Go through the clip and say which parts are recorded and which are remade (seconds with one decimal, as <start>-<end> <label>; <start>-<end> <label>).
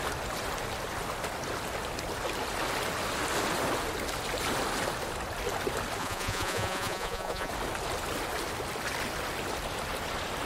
0.0-6.0 recorded; 6.0-7.5 remade; 7.5-10.5 recorded